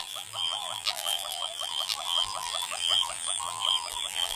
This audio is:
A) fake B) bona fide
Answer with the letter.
A